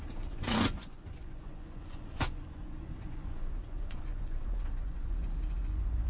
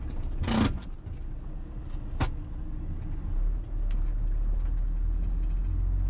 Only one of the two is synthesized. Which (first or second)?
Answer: first